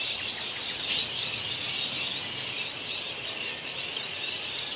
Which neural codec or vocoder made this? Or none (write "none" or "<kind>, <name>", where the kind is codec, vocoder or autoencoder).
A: none